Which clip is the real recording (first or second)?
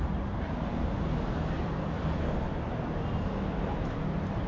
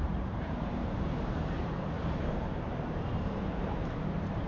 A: first